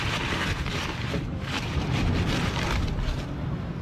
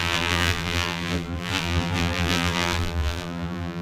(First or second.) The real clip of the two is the first